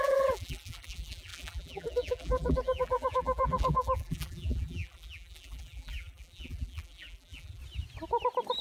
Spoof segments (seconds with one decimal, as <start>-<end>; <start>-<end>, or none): 0.0-7.6